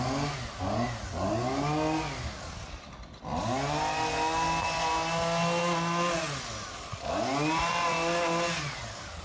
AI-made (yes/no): no